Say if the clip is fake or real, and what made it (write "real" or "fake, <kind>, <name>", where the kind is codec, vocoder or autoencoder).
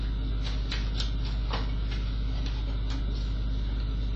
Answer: real